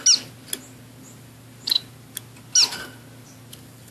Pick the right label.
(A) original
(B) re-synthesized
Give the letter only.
A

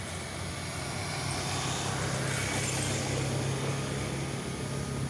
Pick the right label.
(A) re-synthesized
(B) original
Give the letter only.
B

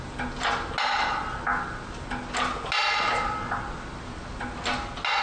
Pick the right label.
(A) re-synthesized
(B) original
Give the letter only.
B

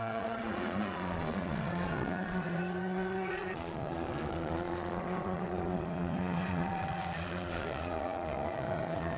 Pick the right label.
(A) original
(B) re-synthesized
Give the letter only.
B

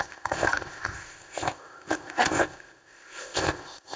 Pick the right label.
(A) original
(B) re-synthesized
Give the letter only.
B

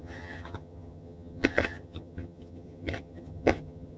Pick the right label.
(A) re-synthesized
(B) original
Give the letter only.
A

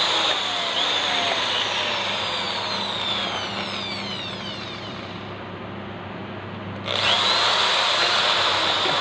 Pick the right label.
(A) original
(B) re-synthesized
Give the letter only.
A